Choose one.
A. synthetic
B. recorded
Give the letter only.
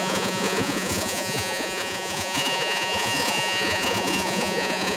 A